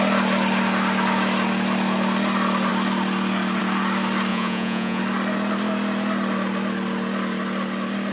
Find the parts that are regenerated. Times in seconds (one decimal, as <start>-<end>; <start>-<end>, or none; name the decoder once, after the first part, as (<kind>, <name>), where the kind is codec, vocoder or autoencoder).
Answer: 4.3-5.0 (vocoder, Vocos)